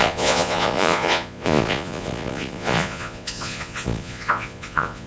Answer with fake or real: fake